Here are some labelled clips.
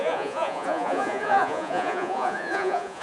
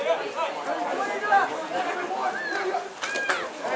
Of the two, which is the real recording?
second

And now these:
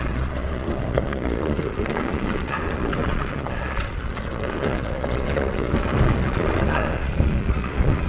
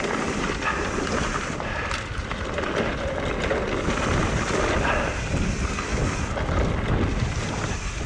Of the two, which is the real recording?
second